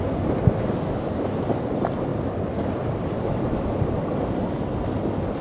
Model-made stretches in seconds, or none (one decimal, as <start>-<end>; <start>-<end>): 2.1-4.2